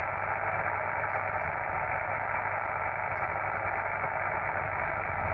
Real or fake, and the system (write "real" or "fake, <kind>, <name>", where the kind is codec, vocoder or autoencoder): real